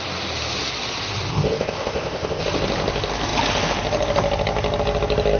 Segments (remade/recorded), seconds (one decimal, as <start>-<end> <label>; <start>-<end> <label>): 0.0-1.3 recorded; 1.3-2.4 remade; 2.4-5.4 recorded

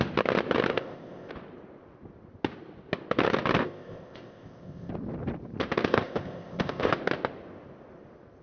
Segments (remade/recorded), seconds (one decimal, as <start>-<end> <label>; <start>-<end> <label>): 0.0-0.7 recorded; 0.7-1.3 remade; 1.3-3.6 recorded; 3.6-4.9 remade; 4.9-5.9 recorded; 5.9-6.9 remade; 6.9-8.4 recorded